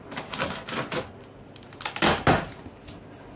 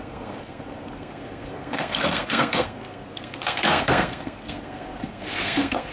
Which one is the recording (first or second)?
first